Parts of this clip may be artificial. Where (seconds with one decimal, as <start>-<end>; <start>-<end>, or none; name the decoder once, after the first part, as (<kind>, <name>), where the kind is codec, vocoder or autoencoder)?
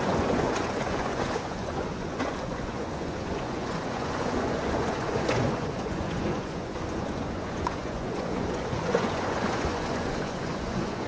0.0-11.1 (vocoder, Vocos)